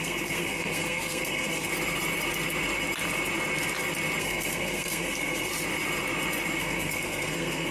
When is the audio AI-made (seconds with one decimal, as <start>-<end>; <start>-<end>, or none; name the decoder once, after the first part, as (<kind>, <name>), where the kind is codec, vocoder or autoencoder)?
0.0-1.7 (codec, SNAC); 4.2-5.5; 6.6-7.7